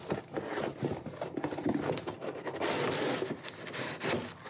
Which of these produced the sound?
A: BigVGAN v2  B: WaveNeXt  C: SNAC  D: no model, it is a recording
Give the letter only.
D